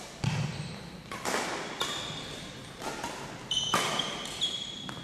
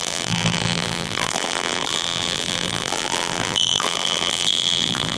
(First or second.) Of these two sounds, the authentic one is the first